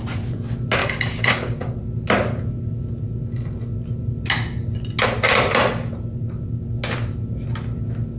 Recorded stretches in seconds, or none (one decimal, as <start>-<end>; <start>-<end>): 0.0-0.8; 1.6-8.2